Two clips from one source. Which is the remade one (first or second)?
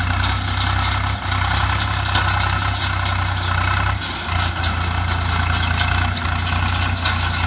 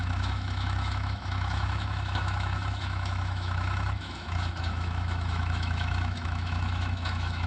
second